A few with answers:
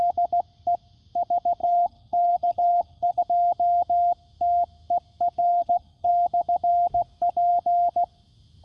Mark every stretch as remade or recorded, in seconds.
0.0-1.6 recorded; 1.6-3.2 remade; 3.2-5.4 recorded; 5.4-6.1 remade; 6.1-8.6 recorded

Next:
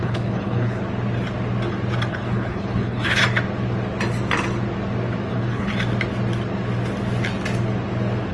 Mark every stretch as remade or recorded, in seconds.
0.0-0.8 remade; 0.8-2.1 recorded; 2.1-3.2 remade; 3.2-5.3 recorded; 5.3-5.7 remade; 5.7-8.3 recorded

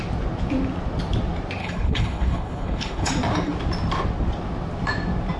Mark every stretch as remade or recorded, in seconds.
0.0-1.6 recorded; 1.6-3.1 remade; 3.1-5.4 recorded